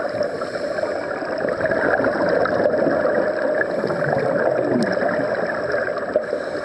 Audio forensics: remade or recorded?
recorded